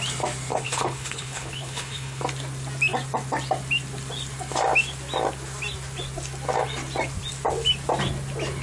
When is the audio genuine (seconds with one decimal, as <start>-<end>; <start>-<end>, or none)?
0.0-0.5; 2.2-8.6